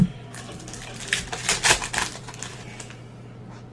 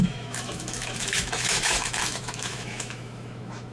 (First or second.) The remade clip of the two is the second